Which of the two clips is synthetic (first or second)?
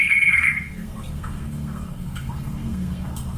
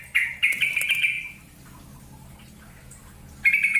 first